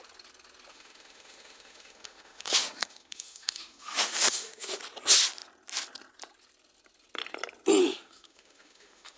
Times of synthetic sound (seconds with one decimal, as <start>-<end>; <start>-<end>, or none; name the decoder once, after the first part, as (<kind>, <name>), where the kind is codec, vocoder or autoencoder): 0.7-4.8 (autoencoder, DAC-VAE); 7.8-9.2